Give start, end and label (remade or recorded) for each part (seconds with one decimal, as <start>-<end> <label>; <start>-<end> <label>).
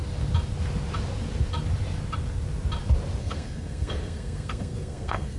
0.0-3.2 recorded; 3.2-5.4 remade